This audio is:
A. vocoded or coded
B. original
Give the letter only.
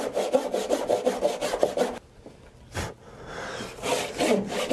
B